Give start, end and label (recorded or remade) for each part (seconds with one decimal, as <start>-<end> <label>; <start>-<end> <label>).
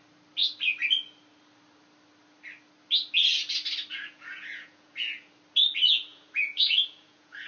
0.0-3.9 recorded; 3.9-5.3 remade; 5.3-6.1 recorded; 6.1-7.5 remade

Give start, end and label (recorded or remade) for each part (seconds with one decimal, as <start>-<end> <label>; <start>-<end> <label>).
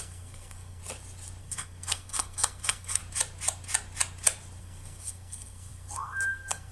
0.0-0.8 remade; 0.8-1.4 recorded; 1.4-3.0 remade; 3.0-4.6 recorded; 4.6-6.7 remade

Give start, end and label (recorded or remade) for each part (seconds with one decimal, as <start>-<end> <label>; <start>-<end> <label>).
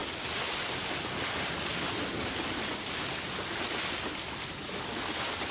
0.0-5.5 recorded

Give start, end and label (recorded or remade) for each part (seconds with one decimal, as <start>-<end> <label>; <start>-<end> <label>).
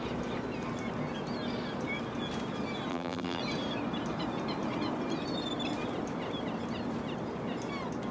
0.0-2.9 recorded; 2.9-3.4 remade; 3.4-8.1 recorded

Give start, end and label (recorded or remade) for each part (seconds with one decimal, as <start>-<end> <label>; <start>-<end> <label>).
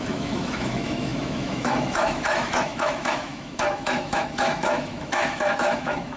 0.0-6.2 remade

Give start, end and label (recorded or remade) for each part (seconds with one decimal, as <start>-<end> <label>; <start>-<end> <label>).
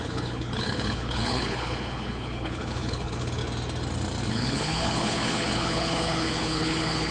0.0-3.4 remade; 3.4-4.3 recorded; 4.3-7.1 remade